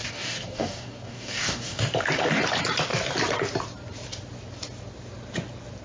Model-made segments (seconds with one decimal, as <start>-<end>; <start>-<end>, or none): 0.0-1.8